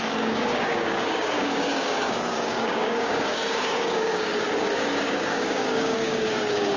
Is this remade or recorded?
remade